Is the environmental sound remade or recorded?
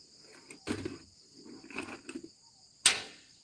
recorded